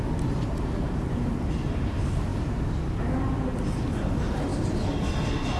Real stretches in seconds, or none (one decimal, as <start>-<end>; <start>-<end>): 0.0-5.6